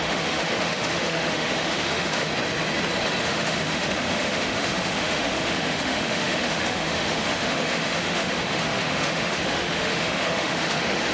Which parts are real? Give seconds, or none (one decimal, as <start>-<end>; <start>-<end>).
2.3-3.2